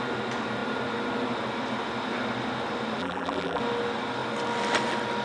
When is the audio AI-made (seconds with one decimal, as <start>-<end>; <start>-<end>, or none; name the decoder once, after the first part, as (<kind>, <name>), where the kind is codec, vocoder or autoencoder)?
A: 3.0-3.6 (vocoder, BigVGAN v2)